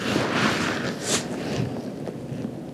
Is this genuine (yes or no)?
yes